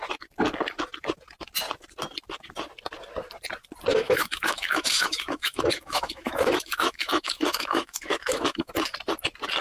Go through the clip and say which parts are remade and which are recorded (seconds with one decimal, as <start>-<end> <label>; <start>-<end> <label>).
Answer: 0.0-3.9 recorded; 3.9-8.7 remade; 8.7-9.6 recorded

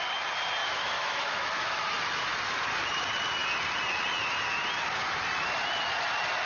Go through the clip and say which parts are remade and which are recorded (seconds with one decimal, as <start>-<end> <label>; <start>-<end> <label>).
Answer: 0.0-0.6 recorded; 0.6-1.9 remade; 1.9-6.5 recorded

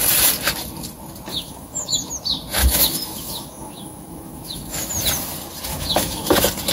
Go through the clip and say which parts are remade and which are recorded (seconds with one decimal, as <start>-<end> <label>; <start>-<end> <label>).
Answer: 0.0-1.3 recorded; 1.3-2.1 remade; 2.1-2.6 recorded; 2.6-4.9 remade; 4.9-5.7 recorded; 5.7-6.3 remade; 6.3-6.7 recorded

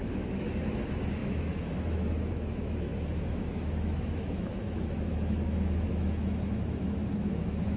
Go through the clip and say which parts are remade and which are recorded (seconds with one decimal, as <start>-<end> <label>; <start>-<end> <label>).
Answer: 0.0-7.8 remade

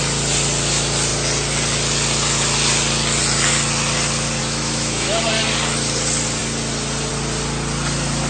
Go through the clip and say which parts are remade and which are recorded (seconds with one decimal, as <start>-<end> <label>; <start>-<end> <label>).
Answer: 0.0-4.4 recorded; 4.4-5.2 remade; 5.2-8.3 recorded